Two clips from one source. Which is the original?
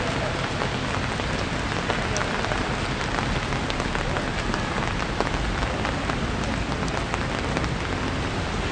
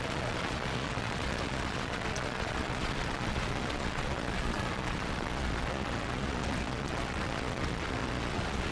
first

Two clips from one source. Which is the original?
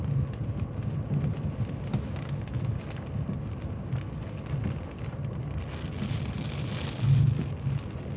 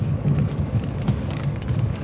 first